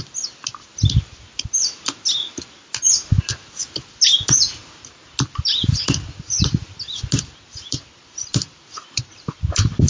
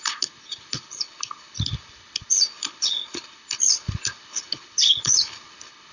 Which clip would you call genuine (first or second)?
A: first